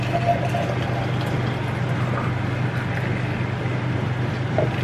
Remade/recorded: recorded